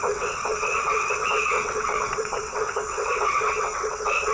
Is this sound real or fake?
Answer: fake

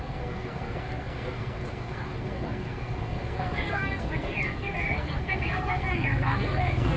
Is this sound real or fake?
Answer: fake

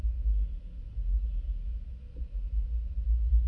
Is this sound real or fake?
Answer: real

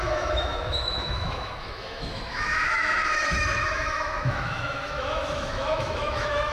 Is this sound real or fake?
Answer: fake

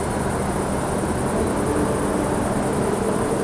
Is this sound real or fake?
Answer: real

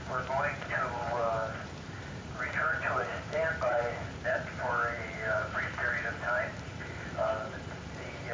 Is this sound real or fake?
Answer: fake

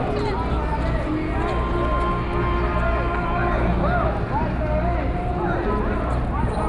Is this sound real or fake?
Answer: real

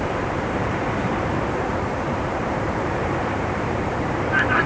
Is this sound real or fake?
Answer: fake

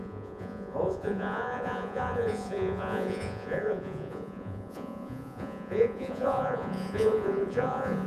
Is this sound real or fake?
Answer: fake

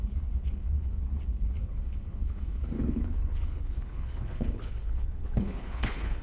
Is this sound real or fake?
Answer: fake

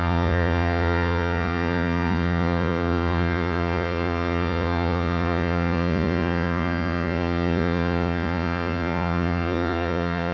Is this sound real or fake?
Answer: fake